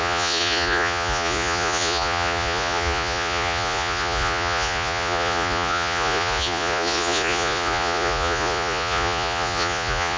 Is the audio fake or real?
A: fake